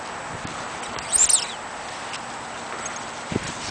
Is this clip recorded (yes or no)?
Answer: yes